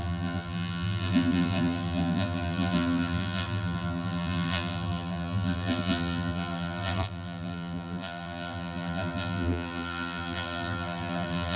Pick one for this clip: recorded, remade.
remade